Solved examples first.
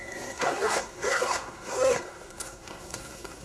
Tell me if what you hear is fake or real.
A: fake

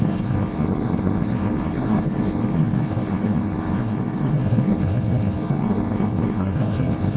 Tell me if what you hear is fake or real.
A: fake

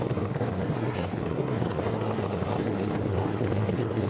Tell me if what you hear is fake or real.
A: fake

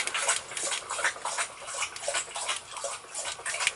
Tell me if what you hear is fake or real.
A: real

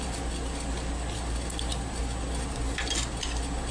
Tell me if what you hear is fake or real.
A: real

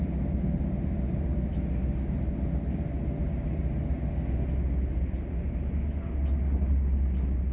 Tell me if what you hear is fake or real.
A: real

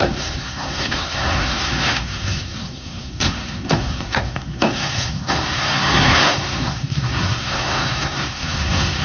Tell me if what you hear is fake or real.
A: fake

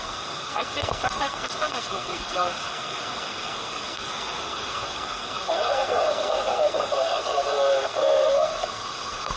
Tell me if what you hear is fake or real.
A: fake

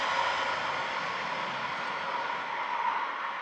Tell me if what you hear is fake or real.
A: real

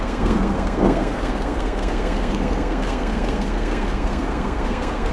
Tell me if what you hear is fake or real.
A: fake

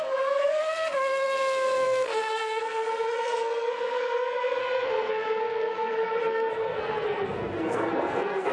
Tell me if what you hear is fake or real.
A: fake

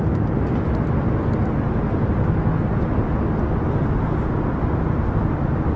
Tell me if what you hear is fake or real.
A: real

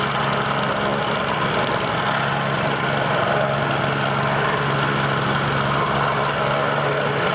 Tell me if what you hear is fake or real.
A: real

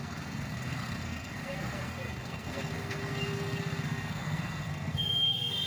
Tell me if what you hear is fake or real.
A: fake